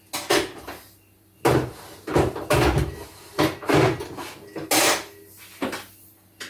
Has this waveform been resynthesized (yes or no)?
no